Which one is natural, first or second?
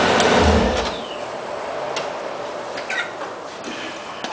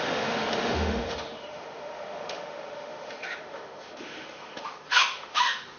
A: first